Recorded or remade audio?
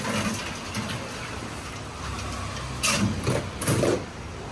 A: recorded